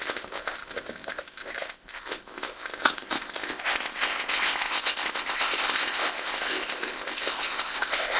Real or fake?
fake